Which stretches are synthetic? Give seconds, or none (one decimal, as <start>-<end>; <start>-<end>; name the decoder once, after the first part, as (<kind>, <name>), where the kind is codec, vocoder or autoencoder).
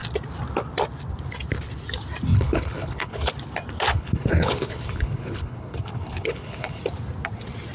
2.3-3.3 (codec, HILCodec); 3.9-6.8